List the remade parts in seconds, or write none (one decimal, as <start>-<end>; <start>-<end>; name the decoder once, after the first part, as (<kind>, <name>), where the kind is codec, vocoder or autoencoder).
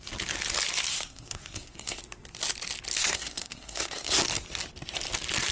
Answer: 0.9-2.0 (codec, SNAC); 3.0-4.2